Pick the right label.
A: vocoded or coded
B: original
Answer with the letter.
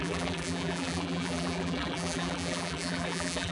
A